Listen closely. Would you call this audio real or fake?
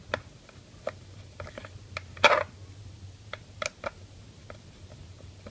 real